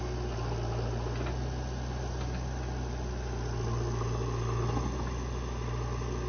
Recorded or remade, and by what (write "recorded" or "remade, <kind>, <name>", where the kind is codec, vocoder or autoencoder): recorded